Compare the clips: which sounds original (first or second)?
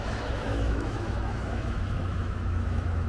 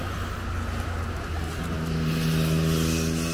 second